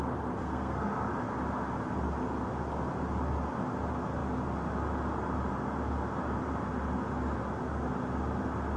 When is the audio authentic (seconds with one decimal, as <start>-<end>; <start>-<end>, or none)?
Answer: 0.0-0.4; 1.1-8.8